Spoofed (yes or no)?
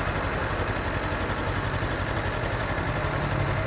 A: no